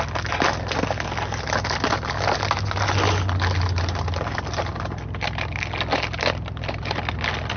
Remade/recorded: recorded